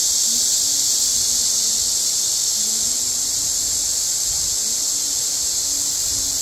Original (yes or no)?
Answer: yes